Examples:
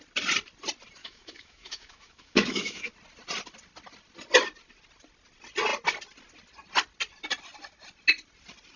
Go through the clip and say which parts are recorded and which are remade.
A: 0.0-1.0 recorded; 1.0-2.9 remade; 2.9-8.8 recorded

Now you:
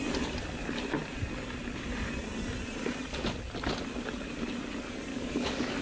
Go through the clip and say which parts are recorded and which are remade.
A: 0.0-5.1 recorded; 5.1-5.8 remade